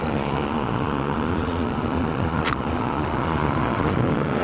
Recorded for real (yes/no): no